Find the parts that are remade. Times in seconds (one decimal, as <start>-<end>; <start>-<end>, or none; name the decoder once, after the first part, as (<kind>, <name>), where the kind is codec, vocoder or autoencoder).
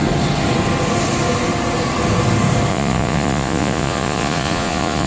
2.7-5.1 (vocoder, Vocos)